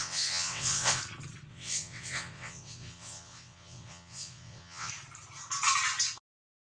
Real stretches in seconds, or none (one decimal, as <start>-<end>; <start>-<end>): 1.0-1.5; 4.9-6.6